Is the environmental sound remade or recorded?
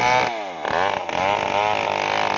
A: recorded